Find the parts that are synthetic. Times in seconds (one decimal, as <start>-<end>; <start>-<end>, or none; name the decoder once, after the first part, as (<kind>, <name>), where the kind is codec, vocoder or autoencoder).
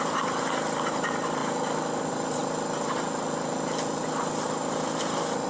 0.0-1.4 (vocoder, BigVGAN v2); 2.0-2.4; 4.0-5.5